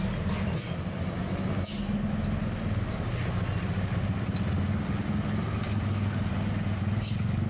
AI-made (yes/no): no